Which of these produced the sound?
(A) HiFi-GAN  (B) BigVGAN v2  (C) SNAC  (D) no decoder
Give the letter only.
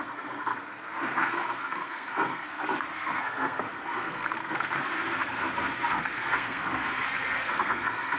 C